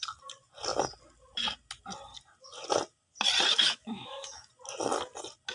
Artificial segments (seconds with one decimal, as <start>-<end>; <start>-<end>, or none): 3.5-4.5